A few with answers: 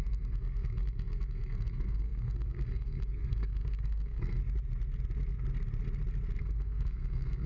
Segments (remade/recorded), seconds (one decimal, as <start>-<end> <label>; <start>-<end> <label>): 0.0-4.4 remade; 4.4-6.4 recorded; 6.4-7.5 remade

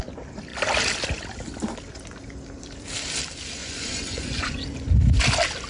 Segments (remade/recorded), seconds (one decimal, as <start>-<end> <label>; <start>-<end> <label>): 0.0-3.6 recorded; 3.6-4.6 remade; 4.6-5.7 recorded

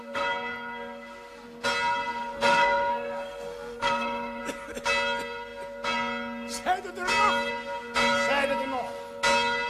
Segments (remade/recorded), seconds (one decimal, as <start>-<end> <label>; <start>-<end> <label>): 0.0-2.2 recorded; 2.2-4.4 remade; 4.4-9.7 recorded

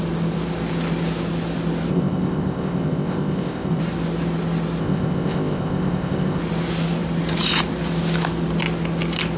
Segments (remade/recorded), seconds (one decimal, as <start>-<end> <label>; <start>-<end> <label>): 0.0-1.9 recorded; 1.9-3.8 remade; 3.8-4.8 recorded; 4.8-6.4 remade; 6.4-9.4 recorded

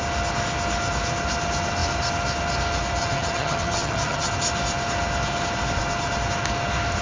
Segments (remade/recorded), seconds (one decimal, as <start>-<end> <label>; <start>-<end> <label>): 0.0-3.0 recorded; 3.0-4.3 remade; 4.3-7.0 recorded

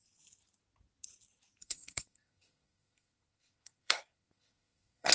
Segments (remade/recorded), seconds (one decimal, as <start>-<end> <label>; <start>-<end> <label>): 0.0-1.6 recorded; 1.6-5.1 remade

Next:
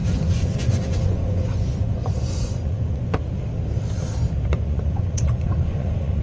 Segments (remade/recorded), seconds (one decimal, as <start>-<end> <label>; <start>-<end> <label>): 0.0-3.3 remade; 3.3-4.5 recorded; 4.5-6.2 remade